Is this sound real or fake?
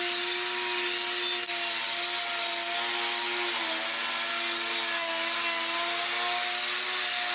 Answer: real